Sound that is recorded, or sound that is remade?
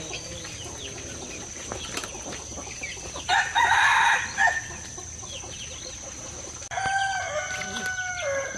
recorded